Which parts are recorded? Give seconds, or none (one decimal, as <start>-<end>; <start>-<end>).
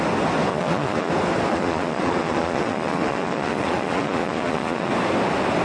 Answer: 0.0-0.5; 1.1-1.5; 4.9-5.6